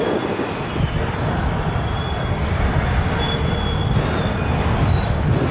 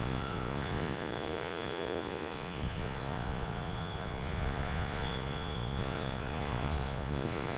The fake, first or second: second